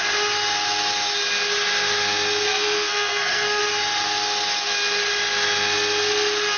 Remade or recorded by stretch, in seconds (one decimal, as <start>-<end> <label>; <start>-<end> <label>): 0.0-2.5 recorded; 2.5-3.6 remade; 3.6-6.6 recorded